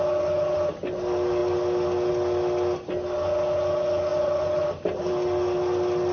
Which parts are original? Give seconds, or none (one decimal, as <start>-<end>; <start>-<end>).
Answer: 0.0-4.1; 5.1-6.1